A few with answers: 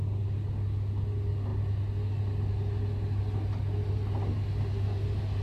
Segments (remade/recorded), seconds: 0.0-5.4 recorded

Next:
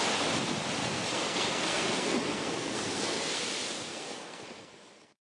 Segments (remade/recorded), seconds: 0.0-0.8 recorded; 0.8-3.4 remade; 3.4-3.9 recorded; 3.9-5.4 remade